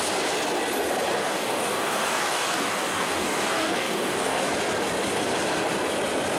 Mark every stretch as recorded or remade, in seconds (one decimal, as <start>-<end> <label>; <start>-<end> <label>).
0.0-1.2 recorded; 1.2-4.5 remade; 4.5-6.4 recorded